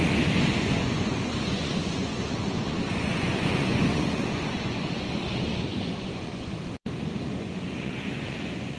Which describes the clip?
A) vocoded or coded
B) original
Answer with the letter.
A